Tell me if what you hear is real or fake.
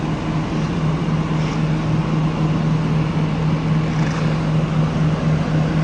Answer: real